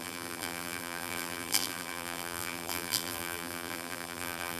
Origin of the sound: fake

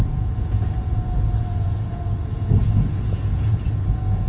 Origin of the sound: fake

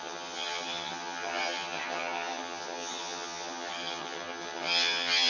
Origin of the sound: fake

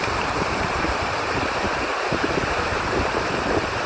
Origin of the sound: fake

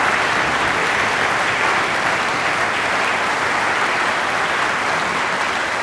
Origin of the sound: real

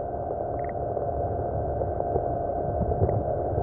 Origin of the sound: real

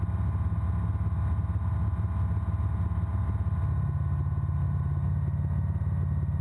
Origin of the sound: real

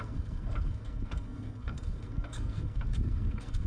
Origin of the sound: fake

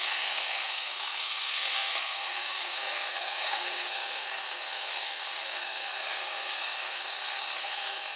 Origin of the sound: fake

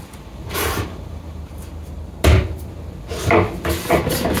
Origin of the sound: real